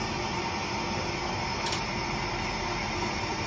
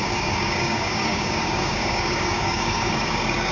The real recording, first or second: first